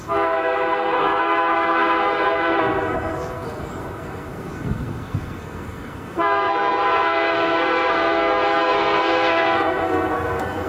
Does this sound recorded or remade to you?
remade